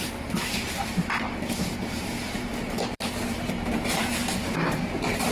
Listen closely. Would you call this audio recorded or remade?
remade